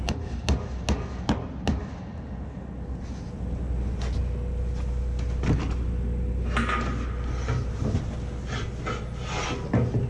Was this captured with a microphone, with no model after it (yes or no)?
yes